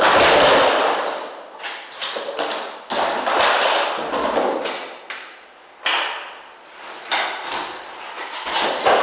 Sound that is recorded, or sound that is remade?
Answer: recorded